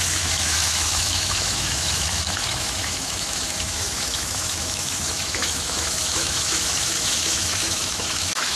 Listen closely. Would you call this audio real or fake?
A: fake